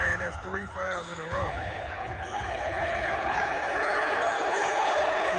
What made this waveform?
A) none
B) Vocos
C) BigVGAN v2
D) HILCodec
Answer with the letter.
D